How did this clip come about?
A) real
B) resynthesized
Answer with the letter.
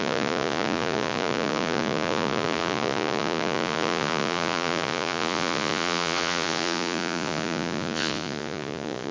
B